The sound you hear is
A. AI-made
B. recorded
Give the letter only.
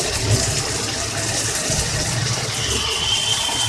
B